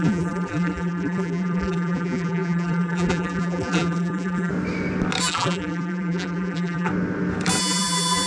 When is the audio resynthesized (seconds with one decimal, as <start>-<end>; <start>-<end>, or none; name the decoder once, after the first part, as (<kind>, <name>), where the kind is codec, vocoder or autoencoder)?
0.0-4.5 (vocoder, BigVGAN v2); 5.2-6.9; 7.6-8.3

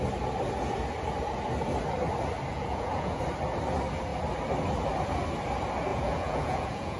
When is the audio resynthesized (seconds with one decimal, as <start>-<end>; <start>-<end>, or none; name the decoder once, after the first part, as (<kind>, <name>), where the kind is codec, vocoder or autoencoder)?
2.5-3.2 (vocoder, Vocos); 5.9-7.0

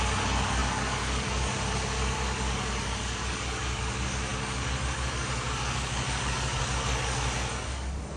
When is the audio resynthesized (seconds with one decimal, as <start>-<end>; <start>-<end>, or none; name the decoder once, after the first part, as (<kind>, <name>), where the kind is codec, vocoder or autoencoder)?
0.0-8.2 (codec, DAC)

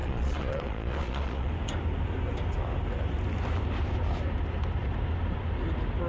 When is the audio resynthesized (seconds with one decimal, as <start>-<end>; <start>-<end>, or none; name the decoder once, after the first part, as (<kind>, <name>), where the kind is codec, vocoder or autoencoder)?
0.0-1.5 (vocoder, Vocos)